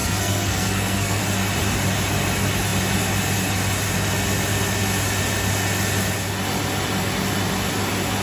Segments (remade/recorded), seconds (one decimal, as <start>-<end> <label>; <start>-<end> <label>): 0.0-1.2 remade; 1.2-8.2 recorded